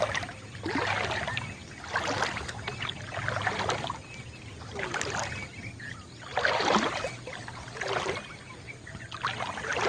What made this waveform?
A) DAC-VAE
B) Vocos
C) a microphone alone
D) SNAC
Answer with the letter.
C